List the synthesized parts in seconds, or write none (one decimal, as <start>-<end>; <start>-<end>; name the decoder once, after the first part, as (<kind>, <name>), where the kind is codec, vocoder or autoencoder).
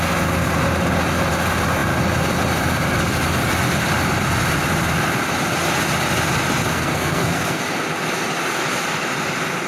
6.7-7.6 (codec, SNAC)